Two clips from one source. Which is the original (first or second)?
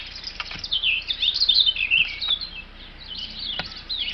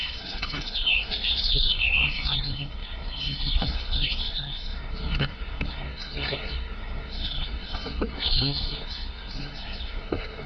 first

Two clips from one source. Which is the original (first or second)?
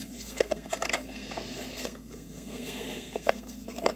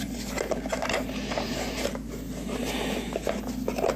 second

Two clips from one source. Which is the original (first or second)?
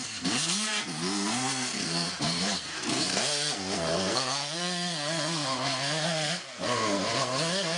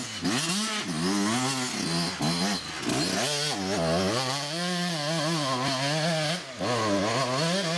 second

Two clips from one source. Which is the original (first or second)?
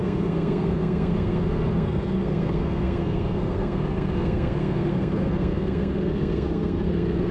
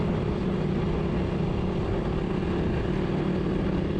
second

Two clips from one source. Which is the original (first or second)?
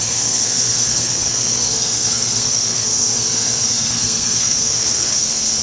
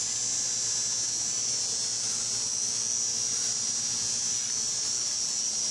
second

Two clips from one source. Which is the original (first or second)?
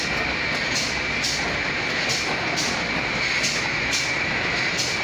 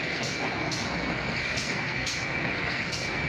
first